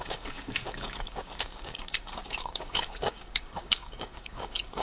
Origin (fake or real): fake